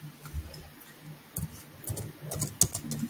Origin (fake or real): real